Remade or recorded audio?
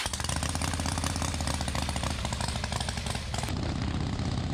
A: recorded